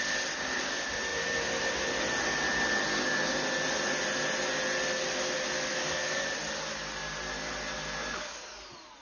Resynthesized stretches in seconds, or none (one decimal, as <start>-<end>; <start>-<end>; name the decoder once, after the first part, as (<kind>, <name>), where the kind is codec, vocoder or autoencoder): 5.7-6.3 (codec, DAC); 8.0-8.6